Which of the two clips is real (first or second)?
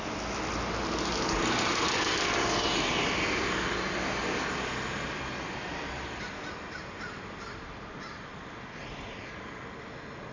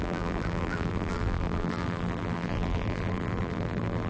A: first